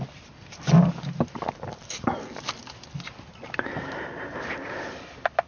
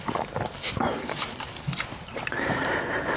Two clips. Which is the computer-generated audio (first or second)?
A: second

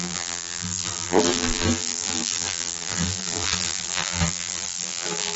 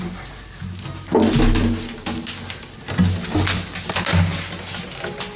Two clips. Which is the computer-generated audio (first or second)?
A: first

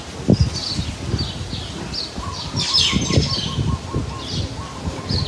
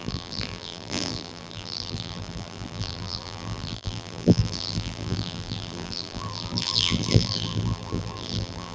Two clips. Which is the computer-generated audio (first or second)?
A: second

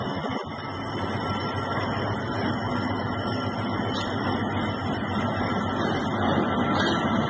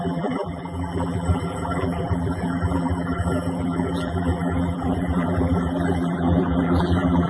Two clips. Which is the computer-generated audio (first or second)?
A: second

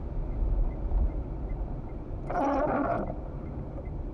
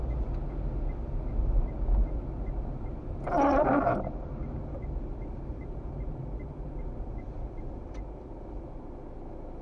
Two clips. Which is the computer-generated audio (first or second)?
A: first